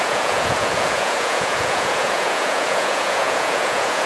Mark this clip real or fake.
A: fake